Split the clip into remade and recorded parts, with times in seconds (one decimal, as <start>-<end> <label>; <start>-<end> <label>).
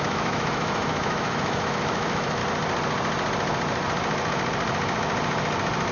0.0-2.4 remade; 2.4-5.9 recorded